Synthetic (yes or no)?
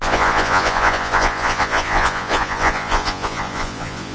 yes